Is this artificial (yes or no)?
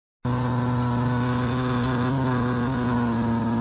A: no